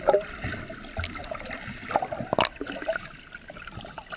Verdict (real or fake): real